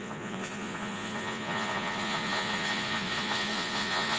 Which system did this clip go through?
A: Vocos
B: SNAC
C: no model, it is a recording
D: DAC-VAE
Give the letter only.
A